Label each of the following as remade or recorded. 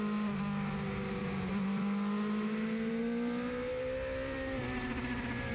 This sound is recorded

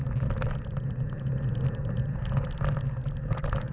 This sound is recorded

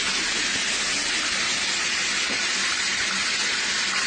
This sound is recorded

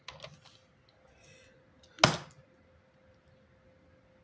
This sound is recorded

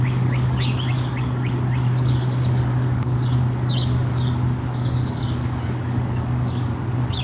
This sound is remade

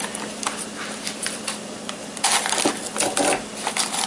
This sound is recorded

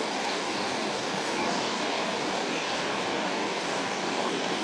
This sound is remade